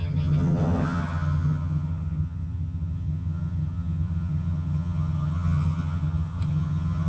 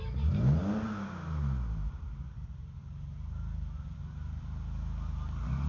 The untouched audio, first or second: second